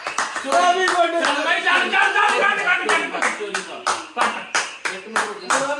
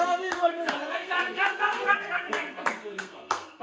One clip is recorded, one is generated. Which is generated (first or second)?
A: second